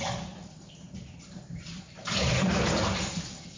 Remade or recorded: remade